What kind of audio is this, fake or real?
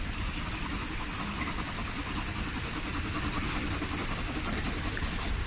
real